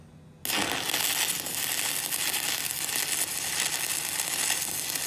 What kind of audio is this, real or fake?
real